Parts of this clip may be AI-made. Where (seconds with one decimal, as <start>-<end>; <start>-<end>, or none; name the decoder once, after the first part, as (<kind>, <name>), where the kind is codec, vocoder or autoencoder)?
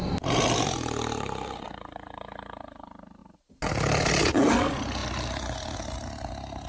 none